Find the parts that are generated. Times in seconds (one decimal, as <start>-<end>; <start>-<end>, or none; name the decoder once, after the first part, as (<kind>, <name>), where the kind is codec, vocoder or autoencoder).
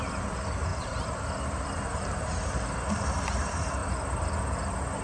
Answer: 0.7-1.8 (vocoder, BigVGAN v2)